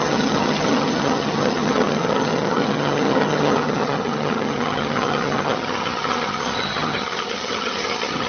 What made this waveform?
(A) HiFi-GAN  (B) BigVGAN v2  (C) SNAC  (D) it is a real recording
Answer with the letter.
A